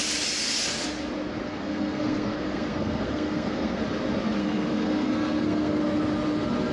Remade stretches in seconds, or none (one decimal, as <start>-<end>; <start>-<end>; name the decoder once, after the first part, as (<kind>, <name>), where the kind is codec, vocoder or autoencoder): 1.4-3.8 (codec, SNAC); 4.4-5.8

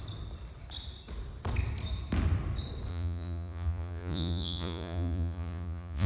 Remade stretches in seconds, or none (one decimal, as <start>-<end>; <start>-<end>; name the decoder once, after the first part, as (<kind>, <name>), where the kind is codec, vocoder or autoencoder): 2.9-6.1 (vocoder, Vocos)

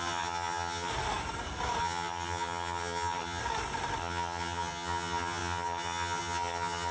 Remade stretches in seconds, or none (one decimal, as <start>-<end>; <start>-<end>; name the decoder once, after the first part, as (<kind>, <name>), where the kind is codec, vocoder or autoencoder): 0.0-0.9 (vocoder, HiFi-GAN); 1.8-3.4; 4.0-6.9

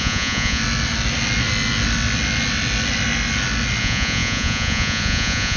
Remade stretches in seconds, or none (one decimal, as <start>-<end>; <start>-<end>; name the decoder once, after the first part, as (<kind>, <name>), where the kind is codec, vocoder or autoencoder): 0.0-0.6 (vocoder, Vocos); 3.8-5.6

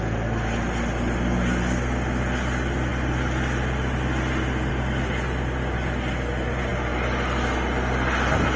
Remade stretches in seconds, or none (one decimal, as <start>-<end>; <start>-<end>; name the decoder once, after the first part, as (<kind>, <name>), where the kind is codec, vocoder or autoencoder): none